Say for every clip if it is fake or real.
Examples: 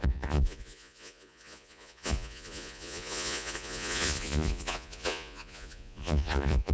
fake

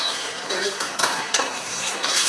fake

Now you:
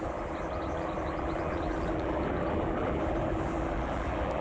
fake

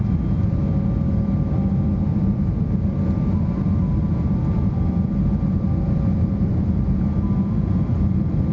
real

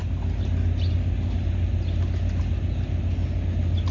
real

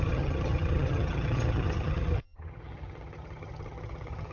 fake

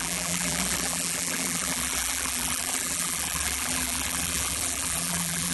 fake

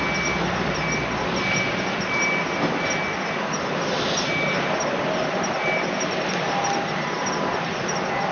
real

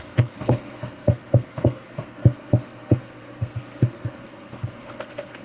fake